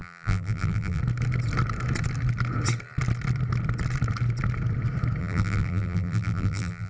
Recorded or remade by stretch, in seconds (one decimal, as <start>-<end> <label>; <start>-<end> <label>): 0.0-1.0 remade; 1.0-5.2 recorded; 5.2-6.9 remade